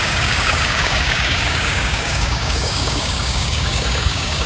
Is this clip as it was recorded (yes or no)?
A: no